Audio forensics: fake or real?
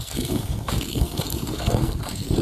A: fake